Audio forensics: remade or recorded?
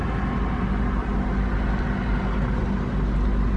recorded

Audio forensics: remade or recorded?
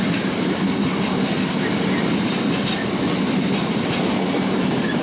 recorded